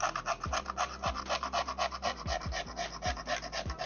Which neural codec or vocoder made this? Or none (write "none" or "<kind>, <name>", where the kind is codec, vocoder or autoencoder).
none